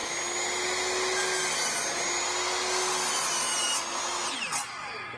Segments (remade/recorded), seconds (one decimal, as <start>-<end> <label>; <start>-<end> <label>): 0.0-5.2 recorded